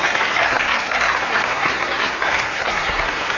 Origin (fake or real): fake